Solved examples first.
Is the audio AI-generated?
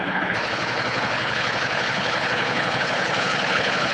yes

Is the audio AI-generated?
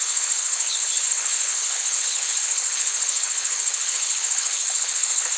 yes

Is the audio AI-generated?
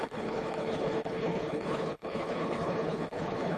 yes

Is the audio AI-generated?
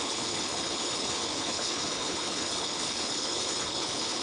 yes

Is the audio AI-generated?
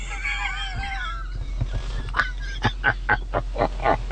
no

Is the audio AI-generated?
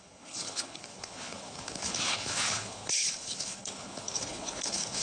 yes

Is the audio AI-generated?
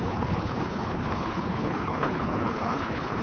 yes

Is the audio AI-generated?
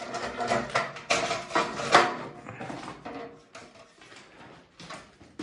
no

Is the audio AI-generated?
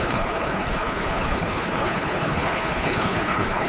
yes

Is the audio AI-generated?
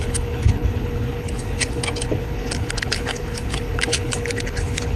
yes